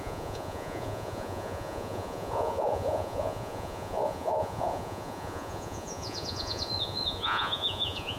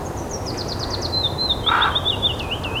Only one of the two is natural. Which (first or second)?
second